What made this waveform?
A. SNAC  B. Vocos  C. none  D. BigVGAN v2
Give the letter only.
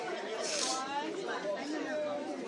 D